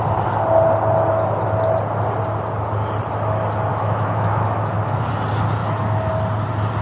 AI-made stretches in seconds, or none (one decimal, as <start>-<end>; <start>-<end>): 3.7-5.1; 5.6-6.1